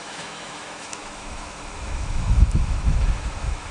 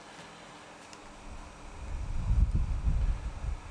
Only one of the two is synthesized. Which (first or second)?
first